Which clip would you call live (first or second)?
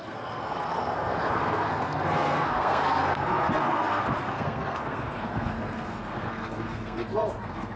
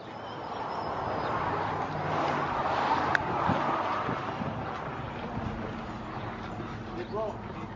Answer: second